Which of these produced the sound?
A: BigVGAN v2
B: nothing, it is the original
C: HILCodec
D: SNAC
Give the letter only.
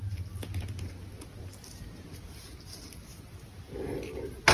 B